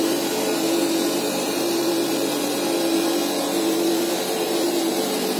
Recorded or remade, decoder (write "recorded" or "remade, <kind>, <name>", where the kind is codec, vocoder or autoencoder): remade, vocoder, BigVGAN v2